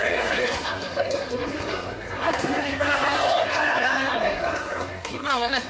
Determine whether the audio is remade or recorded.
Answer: remade